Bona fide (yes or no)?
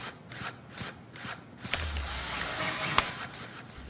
yes